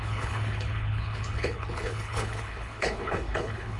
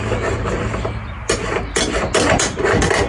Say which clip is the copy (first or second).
first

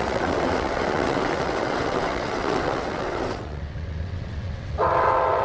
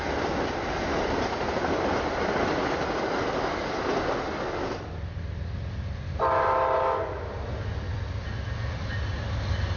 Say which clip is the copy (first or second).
first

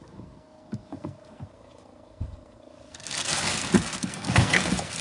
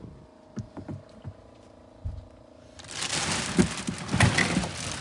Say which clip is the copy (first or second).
first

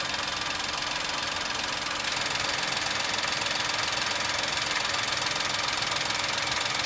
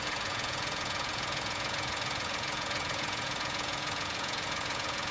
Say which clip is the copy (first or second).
second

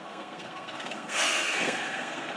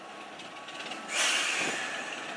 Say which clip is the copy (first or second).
first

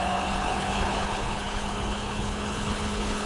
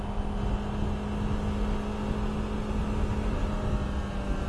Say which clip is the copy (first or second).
first